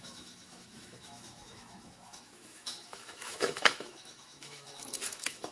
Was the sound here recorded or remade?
remade